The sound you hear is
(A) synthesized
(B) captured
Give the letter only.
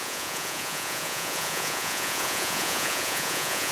A